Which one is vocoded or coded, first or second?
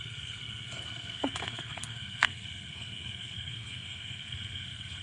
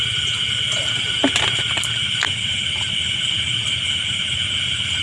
first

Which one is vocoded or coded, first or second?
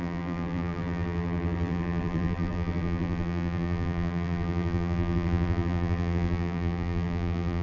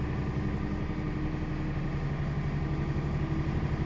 first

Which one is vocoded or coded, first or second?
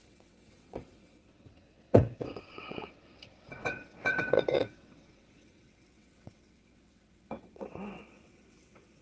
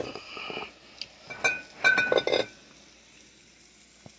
first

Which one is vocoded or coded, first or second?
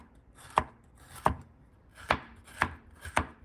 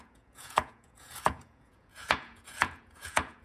second